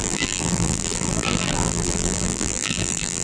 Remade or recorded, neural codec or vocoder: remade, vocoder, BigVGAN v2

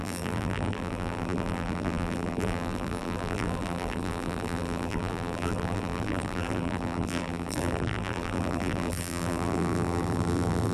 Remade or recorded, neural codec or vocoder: remade, vocoder, BigVGAN v2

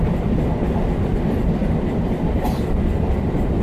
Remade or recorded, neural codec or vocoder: recorded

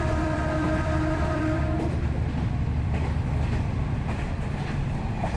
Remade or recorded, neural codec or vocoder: remade, vocoder, BigVGAN v2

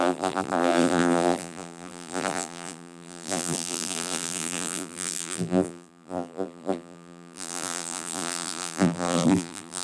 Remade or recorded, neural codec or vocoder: remade, vocoder, BigVGAN v2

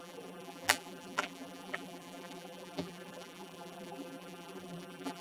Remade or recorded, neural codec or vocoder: remade, vocoder, BigVGAN v2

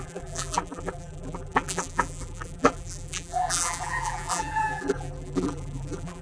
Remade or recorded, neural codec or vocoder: remade, vocoder, BigVGAN v2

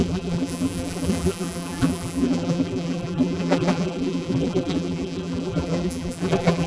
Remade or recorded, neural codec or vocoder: remade, vocoder, BigVGAN v2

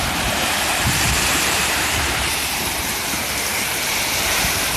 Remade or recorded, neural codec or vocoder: remade, vocoder, BigVGAN v2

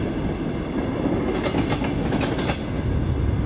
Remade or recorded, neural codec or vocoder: recorded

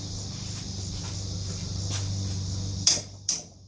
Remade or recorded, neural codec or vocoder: remade, vocoder, BigVGAN v2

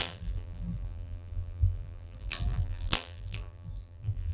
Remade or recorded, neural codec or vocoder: remade, vocoder, BigVGAN v2